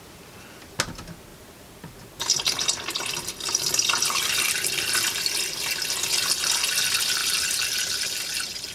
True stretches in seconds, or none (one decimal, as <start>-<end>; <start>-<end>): 0.0-1.3; 5.3-7.2

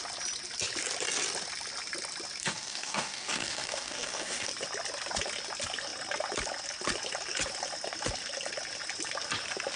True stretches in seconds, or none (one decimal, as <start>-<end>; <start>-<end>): 0.0-2.4; 4.5-9.8

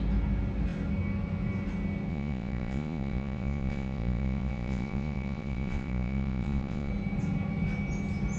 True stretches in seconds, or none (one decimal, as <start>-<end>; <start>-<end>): 0.0-2.1; 6.9-8.4

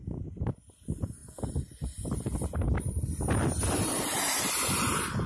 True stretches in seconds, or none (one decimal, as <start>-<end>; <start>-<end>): 0.0-5.3

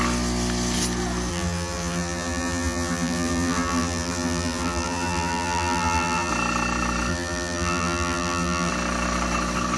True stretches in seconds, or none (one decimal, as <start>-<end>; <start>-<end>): 0.0-1.3; 6.3-7.1; 8.7-9.8

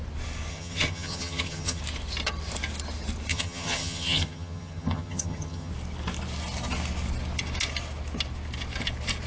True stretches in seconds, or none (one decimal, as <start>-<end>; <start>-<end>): 0.0-0.5; 1.8-3.3; 5.7-9.3

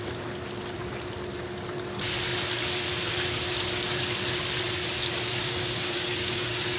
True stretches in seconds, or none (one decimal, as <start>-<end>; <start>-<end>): 0.0-5.3